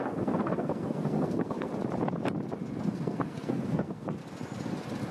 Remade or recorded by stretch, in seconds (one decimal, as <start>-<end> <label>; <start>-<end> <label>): 0.0-1.7 remade; 1.7-2.8 recorded; 2.8-4.2 remade; 4.2-5.1 recorded